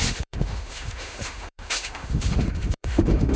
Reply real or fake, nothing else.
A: fake